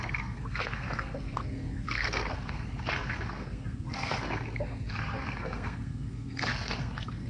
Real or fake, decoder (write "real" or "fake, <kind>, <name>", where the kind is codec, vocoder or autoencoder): fake, codec, SNAC